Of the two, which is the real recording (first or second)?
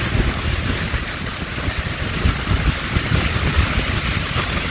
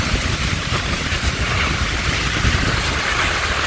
first